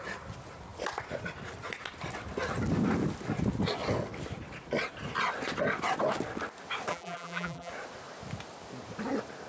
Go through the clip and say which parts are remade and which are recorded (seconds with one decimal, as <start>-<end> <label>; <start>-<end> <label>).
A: 0.0-6.9 recorded; 6.9-7.7 remade; 7.7-9.5 recorded